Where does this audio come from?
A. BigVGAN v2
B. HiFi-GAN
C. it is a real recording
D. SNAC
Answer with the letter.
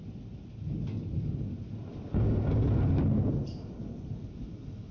C